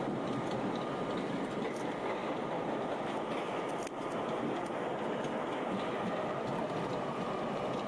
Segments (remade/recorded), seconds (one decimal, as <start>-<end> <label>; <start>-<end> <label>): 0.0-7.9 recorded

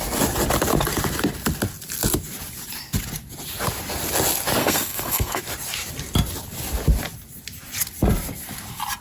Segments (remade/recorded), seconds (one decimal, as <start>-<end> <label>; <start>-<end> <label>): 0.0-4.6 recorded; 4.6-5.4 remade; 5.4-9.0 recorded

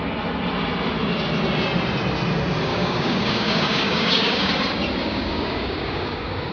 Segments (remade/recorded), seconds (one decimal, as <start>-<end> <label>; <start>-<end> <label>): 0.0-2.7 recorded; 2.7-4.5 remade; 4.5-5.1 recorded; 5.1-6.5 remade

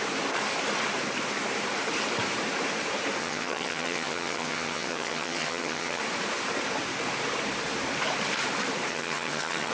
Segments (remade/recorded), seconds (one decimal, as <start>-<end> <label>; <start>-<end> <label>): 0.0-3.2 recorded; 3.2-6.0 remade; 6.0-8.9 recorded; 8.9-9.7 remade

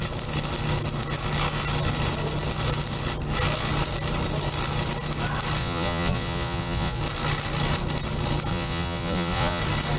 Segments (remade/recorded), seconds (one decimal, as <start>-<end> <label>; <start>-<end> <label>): 0.0-5.6 recorded; 5.6-7.0 remade; 7.0-8.5 recorded; 8.5-9.6 remade; 9.6-10.0 recorded

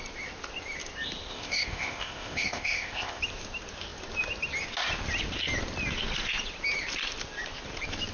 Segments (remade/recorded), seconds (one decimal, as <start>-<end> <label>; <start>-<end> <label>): 0.0-1.3 recorded; 1.3-3.2 remade; 3.2-8.1 recorded

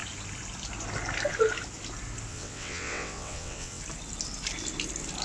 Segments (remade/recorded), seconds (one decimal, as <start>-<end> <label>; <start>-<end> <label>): 0.0-2.3 recorded; 2.3-3.8 remade; 3.8-5.2 recorded